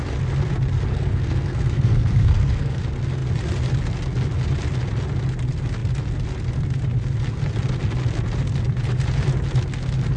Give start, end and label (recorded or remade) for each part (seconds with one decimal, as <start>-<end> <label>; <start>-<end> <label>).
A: 0.0-0.9 recorded; 0.9-2.8 remade; 2.8-10.2 recorded